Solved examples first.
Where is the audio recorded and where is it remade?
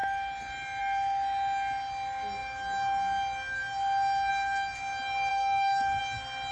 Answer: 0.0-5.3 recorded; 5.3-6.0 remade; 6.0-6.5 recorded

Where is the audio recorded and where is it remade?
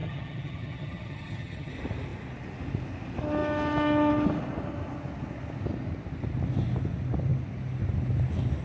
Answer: 0.0-1.7 remade; 1.7-8.6 recorded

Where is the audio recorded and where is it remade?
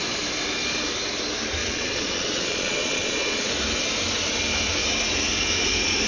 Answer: 0.0-1.6 recorded; 1.6-3.5 remade; 3.5-6.1 recorded